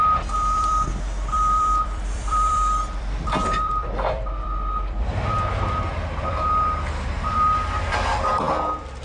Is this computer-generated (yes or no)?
yes